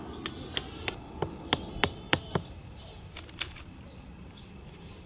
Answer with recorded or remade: recorded